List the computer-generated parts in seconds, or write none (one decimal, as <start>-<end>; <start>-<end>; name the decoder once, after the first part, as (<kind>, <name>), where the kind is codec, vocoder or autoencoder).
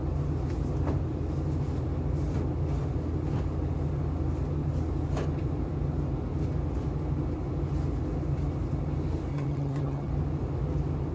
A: 9.3-10.1 (vocoder, HiFi-GAN)